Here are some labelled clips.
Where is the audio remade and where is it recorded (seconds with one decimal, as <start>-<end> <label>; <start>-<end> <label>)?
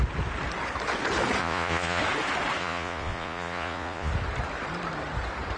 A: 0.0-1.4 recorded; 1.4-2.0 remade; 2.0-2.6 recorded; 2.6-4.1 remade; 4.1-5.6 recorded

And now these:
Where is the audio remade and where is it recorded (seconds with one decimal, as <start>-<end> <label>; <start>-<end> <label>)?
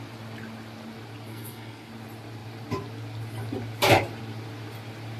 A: 0.0-1.3 recorded; 1.3-1.9 remade; 1.9-5.2 recorded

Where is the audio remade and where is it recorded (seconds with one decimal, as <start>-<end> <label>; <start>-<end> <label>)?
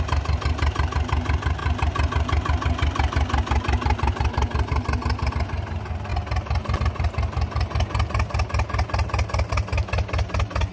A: 0.0-10.7 recorded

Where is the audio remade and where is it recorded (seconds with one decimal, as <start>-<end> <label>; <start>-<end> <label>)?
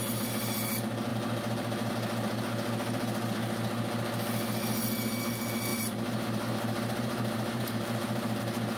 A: 0.0-5.7 recorded; 5.7-8.4 remade; 8.4-8.8 recorded